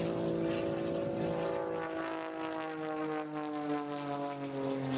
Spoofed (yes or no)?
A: no